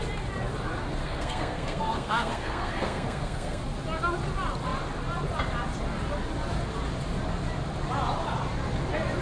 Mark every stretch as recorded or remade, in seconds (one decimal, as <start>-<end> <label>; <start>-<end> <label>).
0.0-1.0 recorded; 1.0-3.6 remade; 3.6-9.2 recorded